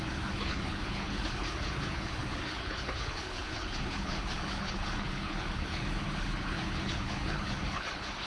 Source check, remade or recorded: remade